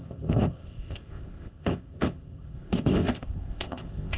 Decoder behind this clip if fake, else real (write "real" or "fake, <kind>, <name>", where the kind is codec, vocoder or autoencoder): fake, codec, ZipCodec